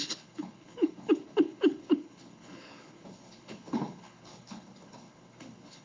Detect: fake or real fake